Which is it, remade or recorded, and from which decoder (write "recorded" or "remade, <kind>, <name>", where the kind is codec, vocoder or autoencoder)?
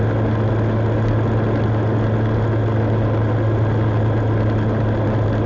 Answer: recorded